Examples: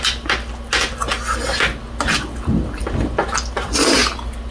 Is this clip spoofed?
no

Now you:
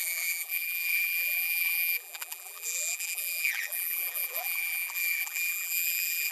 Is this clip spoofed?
yes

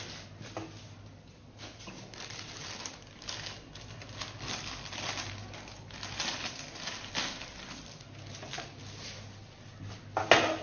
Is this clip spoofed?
no